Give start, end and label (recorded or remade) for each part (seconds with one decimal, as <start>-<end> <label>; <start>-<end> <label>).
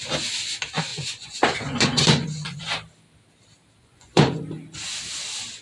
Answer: 0.0-0.9 recorded; 0.9-2.6 remade; 2.6-3.8 recorded; 3.8-4.4 remade; 4.4-5.6 recorded